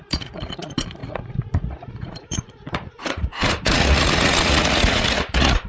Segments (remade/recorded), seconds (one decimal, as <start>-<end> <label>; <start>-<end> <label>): 0.0-5.7 remade